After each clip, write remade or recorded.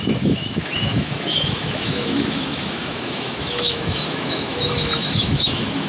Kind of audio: remade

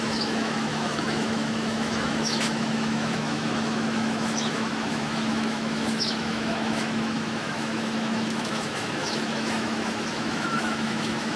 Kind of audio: remade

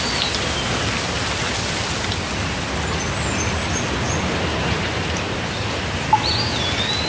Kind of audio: recorded